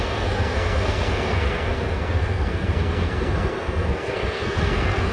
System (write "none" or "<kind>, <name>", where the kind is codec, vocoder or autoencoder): codec, SNAC